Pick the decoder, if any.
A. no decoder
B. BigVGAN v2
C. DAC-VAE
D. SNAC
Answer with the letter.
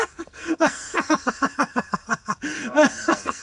D